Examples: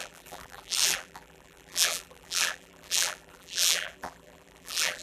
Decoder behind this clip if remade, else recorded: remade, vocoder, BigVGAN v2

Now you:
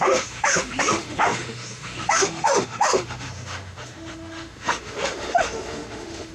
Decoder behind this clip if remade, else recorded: remade, autoencoder, DAC-VAE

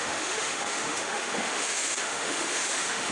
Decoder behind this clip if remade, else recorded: remade, autoencoder, DAC-VAE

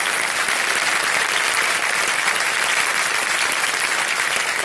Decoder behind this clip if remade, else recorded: recorded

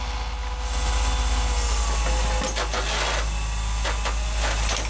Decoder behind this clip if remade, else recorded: recorded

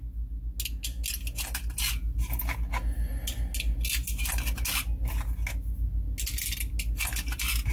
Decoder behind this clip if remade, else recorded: recorded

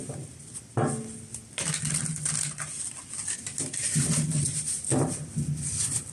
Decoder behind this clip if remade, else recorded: recorded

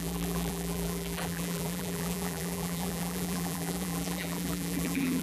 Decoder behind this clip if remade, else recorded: remade, vocoder, BigVGAN v2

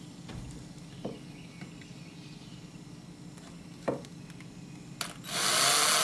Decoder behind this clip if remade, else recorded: recorded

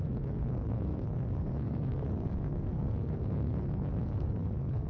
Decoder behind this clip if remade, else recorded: remade, codec, SNAC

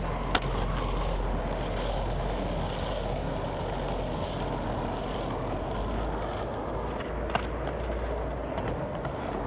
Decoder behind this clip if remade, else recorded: recorded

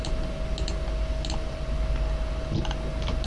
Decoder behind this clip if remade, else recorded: recorded